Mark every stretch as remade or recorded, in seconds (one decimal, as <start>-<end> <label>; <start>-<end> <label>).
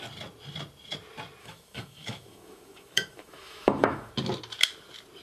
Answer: 0.0-1.4 recorded; 1.4-4.1 remade; 4.1-5.2 recorded